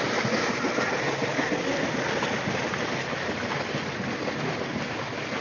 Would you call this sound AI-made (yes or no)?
no